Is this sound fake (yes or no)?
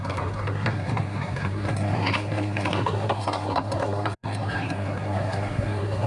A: yes